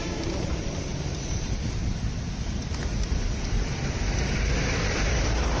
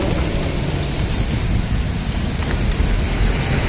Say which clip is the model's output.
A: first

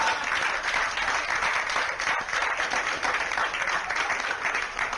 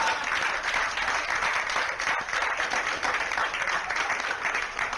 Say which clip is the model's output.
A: second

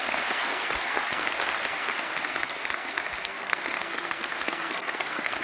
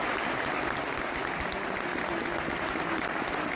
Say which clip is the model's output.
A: first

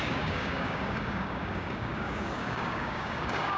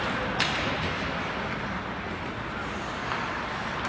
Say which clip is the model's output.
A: first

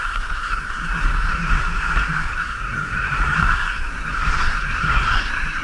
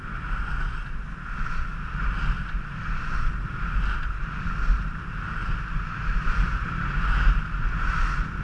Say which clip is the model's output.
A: first